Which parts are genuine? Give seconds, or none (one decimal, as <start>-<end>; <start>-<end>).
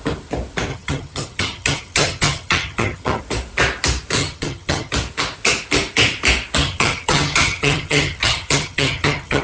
0.0-0.7; 3.2-4.2; 4.9-6.6